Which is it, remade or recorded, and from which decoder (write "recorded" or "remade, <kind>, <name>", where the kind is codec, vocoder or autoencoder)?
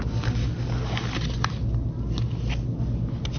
recorded